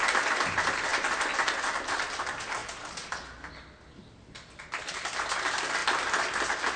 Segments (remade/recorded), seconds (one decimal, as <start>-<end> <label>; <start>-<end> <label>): 0.0-6.8 recorded